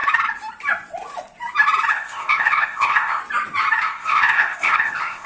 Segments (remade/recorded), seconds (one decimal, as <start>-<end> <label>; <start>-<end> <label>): 0.0-1.9 recorded; 1.9-3.2 remade; 3.2-3.8 recorded; 3.8-5.3 remade